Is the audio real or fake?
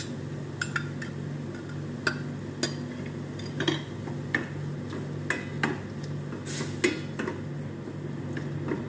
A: real